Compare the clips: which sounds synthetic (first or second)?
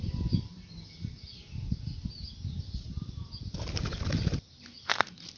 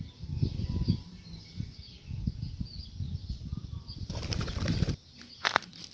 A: second